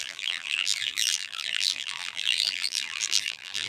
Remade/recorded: remade